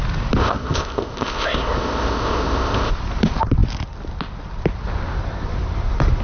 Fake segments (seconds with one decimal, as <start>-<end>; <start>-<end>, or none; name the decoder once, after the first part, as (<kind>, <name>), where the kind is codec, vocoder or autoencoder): 0.4-2.9 (codec, ZipCodec)